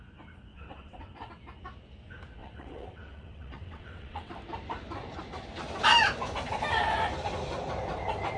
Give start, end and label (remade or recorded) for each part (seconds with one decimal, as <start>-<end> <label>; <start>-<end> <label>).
0.0-0.5 recorded; 0.5-1.3 remade; 1.3-2.4 recorded; 2.4-4.3 remade; 4.3-8.4 recorded